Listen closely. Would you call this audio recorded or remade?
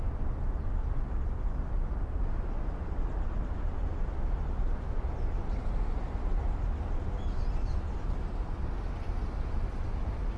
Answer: recorded